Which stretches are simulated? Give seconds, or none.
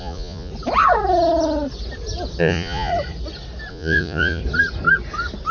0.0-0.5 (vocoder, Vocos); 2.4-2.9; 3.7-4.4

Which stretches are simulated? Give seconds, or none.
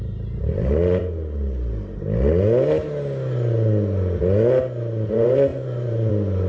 0.0-1.2 (vocoder, BigVGAN v2); 5.1-6.5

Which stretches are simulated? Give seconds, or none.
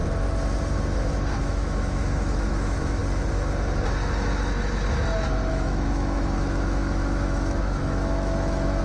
1.3-3.0 (autoencoder, DAC-VAE); 5.5-8.8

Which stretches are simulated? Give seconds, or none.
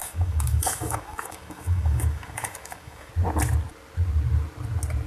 0.0-3.1 (codec, DAC)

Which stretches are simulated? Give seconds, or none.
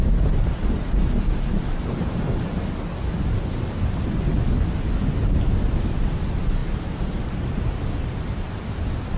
none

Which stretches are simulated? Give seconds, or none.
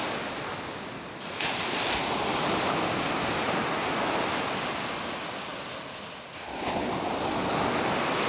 none